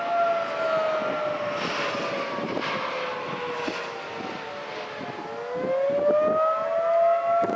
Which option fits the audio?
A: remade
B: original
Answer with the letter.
B